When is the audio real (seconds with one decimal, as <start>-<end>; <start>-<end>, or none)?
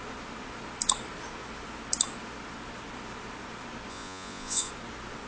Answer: 0.0-3.9; 4.7-5.3